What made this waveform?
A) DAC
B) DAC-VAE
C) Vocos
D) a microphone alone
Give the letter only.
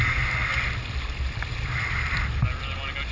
D